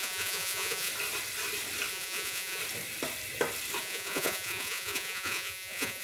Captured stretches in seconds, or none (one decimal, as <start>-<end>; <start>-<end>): 0.9-1.9; 2.6-3.8